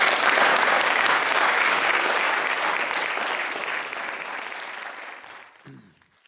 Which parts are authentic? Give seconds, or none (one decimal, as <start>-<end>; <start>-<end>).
0.0-0.5; 2.4-6.3